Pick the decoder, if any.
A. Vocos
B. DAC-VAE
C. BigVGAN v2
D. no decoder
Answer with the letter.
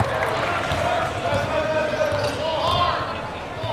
D